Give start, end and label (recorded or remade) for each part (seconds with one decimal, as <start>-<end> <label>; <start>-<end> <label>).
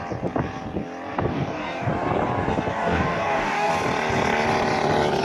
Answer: 0.0-1.3 recorded; 1.3-1.9 remade; 1.9-2.7 recorded; 2.7-3.7 remade; 3.7-5.2 recorded